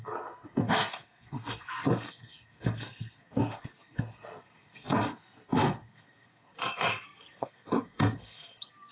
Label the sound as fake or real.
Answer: fake